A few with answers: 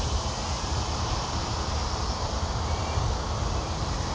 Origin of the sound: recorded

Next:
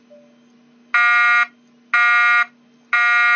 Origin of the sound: recorded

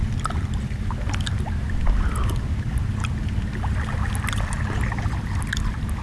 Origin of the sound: recorded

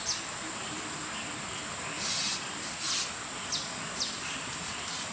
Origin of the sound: recorded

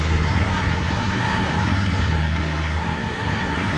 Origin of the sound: remade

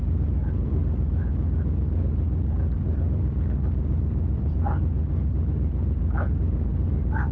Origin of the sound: remade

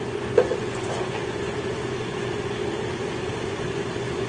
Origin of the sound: remade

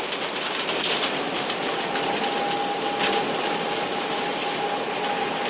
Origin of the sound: recorded